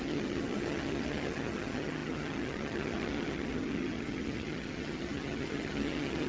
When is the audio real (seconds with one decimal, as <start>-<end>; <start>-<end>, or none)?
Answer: none